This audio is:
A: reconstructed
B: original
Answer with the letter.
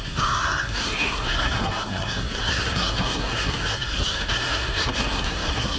A